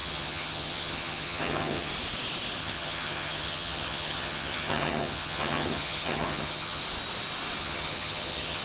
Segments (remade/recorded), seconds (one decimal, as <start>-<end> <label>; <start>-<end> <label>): 0.0-1.9 remade; 1.9-2.6 recorded; 2.6-6.8 remade; 6.8-7.6 recorded; 7.6-8.6 remade